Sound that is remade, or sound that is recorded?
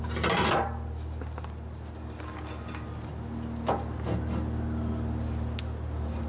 recorded